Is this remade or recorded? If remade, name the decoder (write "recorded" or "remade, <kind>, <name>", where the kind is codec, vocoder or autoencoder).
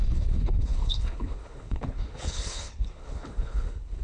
remade, codec, HILCodec